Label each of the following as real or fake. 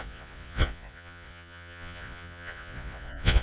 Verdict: fake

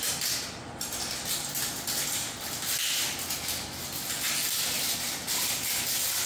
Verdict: real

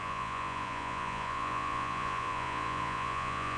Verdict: fake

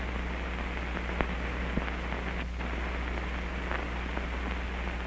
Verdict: real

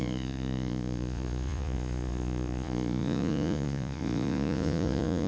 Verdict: fake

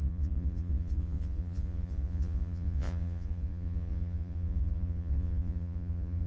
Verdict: fake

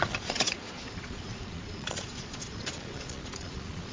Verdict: fake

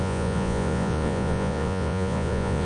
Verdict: fake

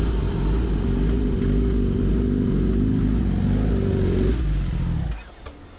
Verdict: real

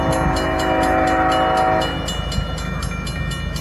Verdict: real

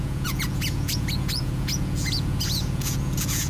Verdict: fake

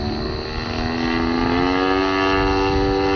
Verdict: real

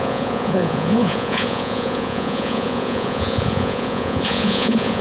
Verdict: fake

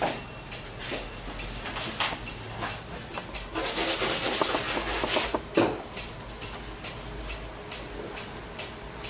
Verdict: real